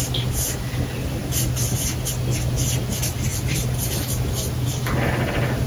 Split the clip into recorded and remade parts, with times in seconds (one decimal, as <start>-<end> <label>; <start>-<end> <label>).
0.0-5.7 recorded